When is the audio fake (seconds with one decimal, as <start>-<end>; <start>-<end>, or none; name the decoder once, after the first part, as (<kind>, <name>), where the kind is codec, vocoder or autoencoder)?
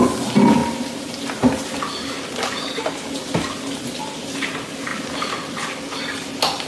4.9-5.7 (vocoder, BigVGAN v2)